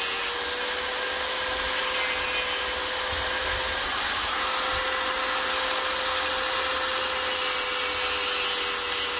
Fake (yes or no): no